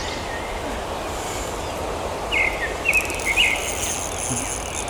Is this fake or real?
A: real